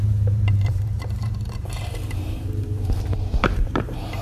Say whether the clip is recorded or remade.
remade